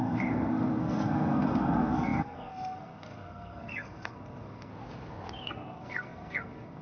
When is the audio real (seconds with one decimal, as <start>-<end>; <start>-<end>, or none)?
4.7-5.5